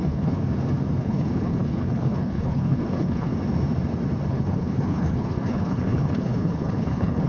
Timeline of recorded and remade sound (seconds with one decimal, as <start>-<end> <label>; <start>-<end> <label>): 0.0-0.4 remade; 0.4-1.0 recorded; 1.0-3.3 remade; 3.3-4.3 recorded; 4.3-7.3 remade